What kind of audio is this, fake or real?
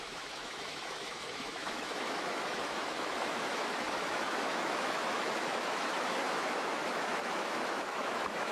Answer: fake